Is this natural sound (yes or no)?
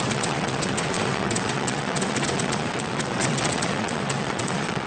no